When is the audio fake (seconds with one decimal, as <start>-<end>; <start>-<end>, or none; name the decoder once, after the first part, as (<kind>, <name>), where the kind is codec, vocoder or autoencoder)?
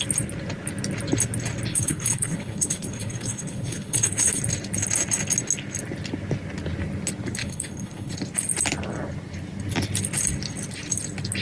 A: 1.7-4.4 (codec, HILCodec); 7.4-8.1